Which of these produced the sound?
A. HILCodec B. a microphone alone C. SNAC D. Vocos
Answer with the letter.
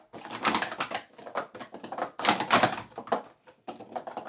B